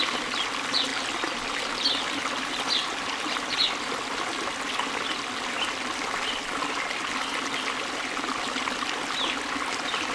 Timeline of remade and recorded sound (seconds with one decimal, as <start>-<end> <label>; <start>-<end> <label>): 0.0-10.1 recorded